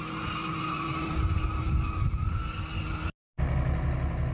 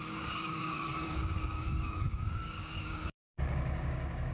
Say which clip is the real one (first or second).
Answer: first